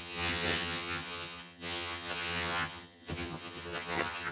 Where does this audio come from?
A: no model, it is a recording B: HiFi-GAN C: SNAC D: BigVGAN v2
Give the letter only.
B